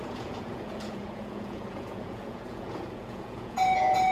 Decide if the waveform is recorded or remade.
remade